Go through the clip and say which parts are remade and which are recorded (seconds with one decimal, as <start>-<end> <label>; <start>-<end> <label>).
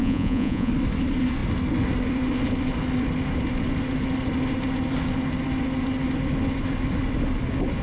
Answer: 0.0-0.7 remade; 0.7-7.8 recorded